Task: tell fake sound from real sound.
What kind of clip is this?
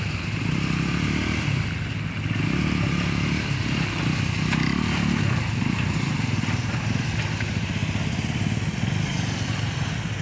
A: real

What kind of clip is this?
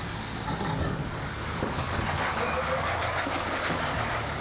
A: fake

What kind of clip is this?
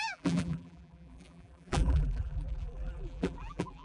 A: fake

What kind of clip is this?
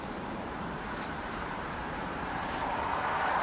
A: fake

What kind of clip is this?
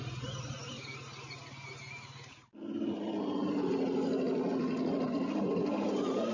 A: real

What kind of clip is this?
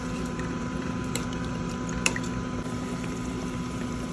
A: fake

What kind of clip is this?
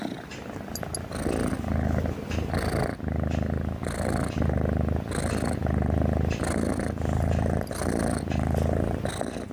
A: real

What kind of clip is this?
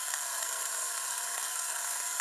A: fake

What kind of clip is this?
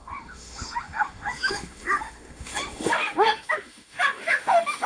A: fake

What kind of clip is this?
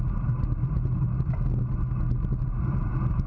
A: real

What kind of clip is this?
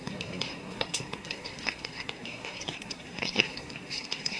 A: fake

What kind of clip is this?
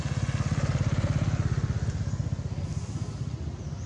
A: real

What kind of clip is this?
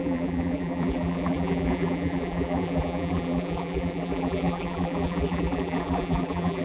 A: fake